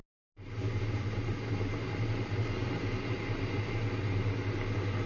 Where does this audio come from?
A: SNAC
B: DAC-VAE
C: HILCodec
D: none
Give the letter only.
D